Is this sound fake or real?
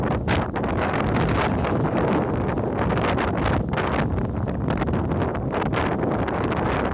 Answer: real